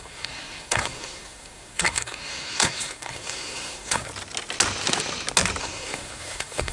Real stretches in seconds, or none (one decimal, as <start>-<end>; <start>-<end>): 4.1-5.6